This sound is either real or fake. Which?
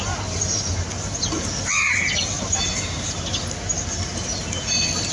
real